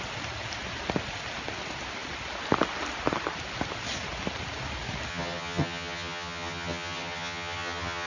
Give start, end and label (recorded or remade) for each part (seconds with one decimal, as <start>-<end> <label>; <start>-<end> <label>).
0.0-5.1 recorded; 5.1-8.1 remade